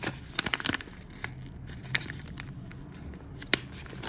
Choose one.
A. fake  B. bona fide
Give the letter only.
A